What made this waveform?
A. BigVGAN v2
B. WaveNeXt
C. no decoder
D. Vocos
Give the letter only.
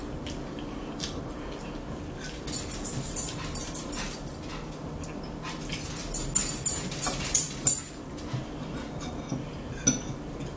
C